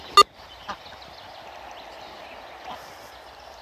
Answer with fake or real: real